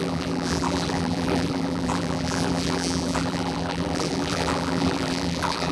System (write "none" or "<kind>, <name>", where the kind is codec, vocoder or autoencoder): vocoder, BigVGAN v2